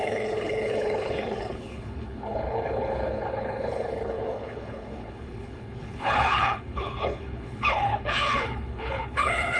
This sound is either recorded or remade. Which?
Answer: remade